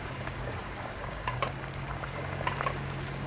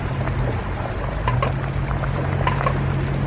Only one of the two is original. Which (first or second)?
second